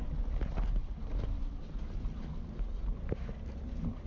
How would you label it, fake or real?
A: real